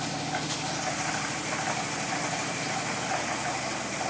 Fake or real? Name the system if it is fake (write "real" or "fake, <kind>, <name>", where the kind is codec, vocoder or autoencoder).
real